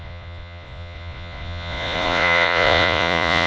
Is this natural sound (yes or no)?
no